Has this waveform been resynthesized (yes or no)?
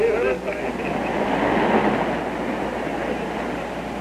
no